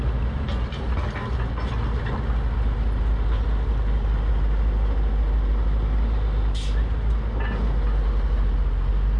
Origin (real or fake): real